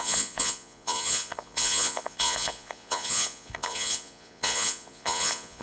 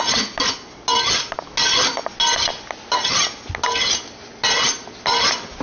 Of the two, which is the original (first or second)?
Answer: second